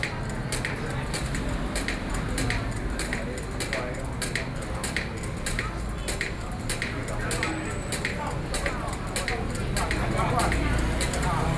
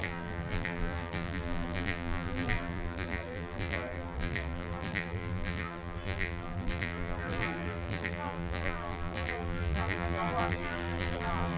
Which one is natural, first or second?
first